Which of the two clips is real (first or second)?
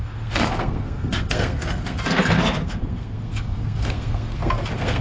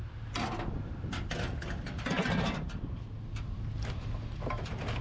second